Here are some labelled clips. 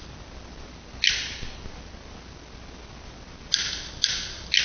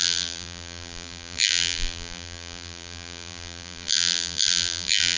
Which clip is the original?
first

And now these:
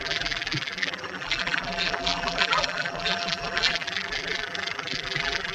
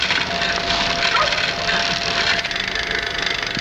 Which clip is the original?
second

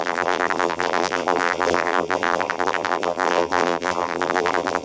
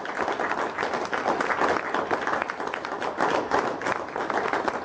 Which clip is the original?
second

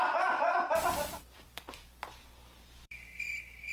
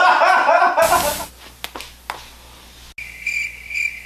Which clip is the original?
second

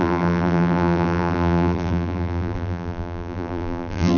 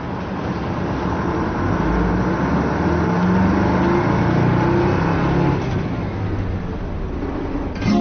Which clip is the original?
second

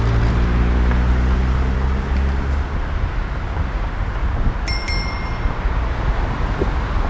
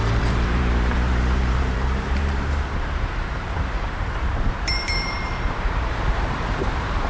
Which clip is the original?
first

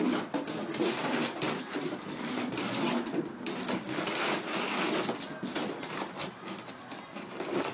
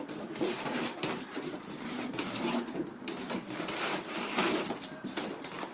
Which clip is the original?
first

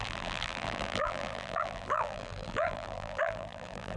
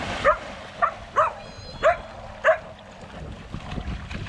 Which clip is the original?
second